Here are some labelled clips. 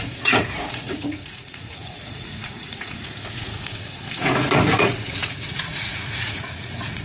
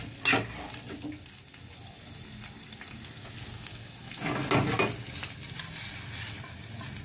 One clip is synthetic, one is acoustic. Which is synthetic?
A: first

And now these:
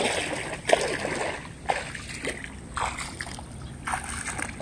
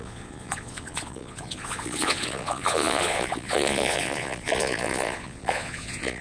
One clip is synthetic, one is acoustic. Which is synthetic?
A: second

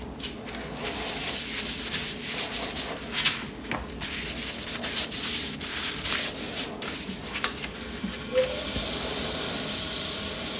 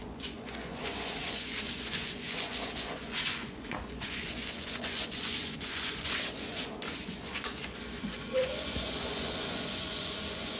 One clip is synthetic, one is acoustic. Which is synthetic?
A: second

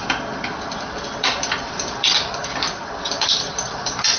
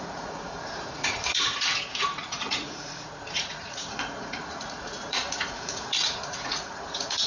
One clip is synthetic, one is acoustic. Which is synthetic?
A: second